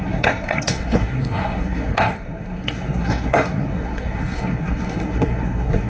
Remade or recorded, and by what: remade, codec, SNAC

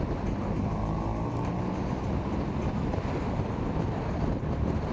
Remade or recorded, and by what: recorded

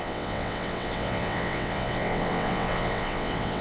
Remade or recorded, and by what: remade, vocoder, WaveNeXt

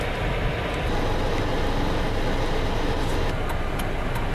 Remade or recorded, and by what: recorded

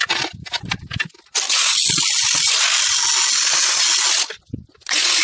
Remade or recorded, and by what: recorded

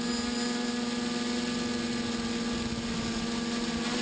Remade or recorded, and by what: recorded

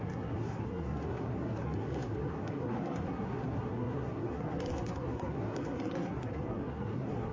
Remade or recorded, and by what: remade, codec, SNAC